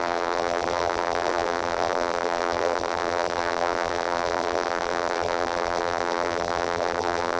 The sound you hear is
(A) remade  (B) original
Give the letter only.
A